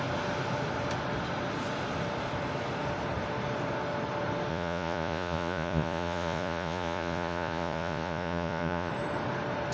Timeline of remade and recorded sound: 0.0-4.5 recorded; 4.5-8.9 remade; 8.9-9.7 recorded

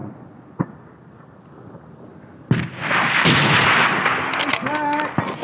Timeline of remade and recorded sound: 0.0-0.7 remade; 0.7-5.4 recorded

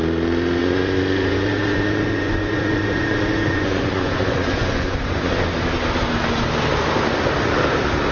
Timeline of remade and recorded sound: 0.0-0.6 recorded; 0.6-5.5 remade; 5.5-8.1 recorded

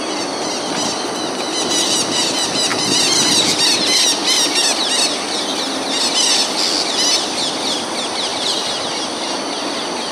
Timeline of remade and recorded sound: 0.0-10.1 recorded